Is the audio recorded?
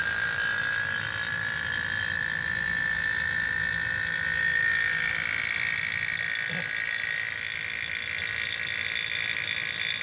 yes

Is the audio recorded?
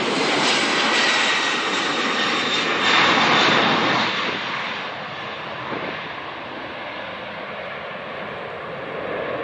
yes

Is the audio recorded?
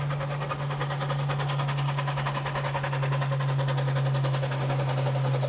yes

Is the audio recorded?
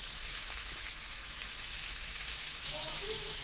no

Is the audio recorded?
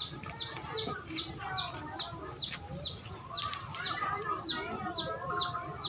yes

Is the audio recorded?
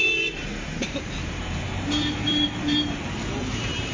no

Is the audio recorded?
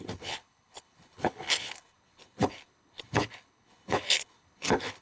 no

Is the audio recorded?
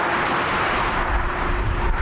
yes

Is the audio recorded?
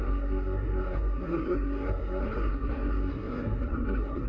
no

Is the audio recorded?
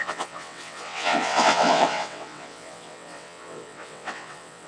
no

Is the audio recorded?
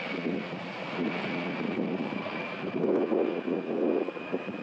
no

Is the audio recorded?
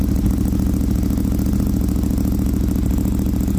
yes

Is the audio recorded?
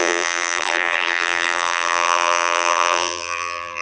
no